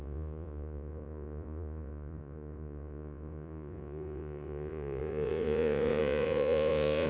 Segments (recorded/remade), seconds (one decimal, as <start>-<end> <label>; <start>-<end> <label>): 0.0-7.1 remade